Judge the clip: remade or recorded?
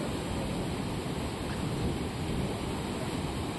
recorded